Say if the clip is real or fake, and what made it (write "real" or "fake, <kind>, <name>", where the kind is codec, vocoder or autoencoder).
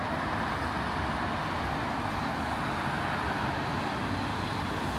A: real